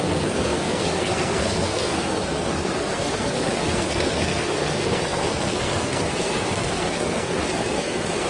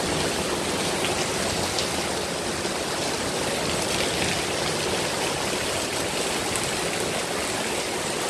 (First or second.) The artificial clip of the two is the first